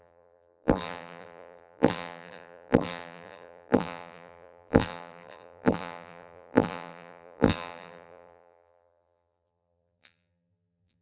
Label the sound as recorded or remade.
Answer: remade